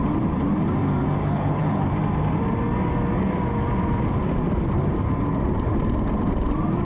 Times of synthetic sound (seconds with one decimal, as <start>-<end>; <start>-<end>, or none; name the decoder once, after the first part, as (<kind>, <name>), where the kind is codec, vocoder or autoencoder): 1.2-1.9 (codec, HILCodec)